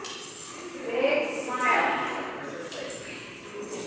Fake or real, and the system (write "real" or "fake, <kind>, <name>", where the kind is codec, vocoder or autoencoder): real